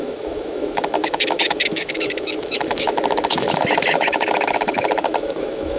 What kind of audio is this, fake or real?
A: fake